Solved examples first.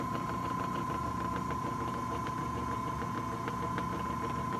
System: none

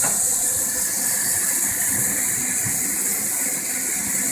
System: none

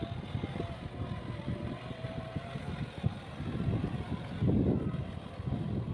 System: none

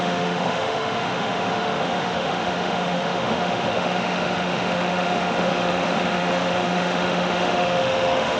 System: autoencoder, DAC-VAE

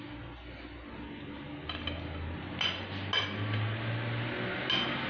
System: none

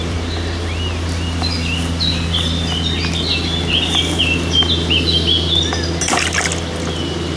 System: none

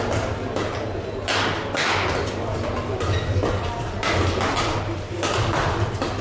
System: none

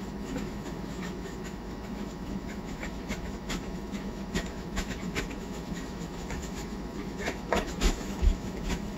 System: autoencoder, DAC-VAE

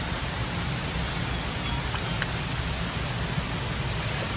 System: none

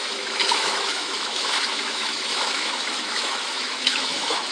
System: autoencoder, DAC-VAE